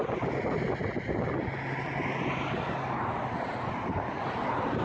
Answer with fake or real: real